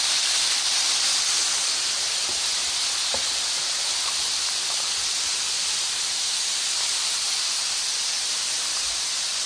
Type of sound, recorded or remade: recorded